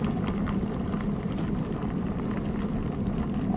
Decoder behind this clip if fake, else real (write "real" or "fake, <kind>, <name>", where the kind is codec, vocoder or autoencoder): real